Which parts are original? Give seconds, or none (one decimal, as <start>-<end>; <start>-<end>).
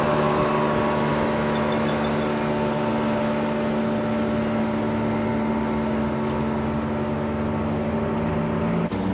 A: 0.0-1.1; 1.9-9.1